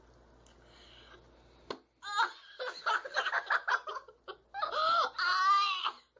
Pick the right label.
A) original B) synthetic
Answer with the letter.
A